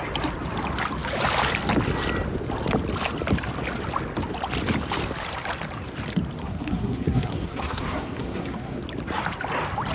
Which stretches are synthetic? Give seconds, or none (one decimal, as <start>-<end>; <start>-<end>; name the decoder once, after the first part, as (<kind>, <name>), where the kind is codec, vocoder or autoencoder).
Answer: 6.4-8.8 (codec, SNAC)